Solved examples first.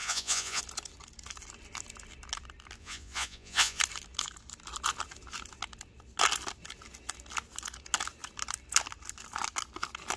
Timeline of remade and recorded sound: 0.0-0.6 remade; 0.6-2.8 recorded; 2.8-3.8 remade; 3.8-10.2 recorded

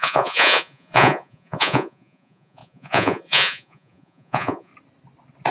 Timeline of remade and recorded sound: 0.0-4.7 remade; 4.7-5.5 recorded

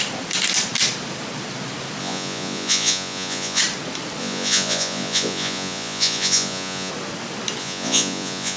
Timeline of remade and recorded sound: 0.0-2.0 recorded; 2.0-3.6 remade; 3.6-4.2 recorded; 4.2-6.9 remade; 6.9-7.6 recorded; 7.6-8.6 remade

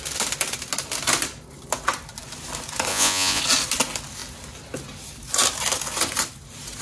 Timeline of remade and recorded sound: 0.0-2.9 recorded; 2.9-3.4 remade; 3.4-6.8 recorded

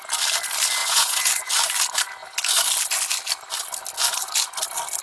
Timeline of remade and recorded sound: 0.0-0.8 recorded; 0.8-1.3 remade; 1.3-5.0 recorded

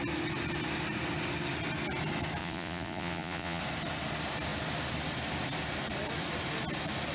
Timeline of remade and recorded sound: 0.0-2.4 recorded; 2.4-3.6 remade; 3.6-7.1 recorded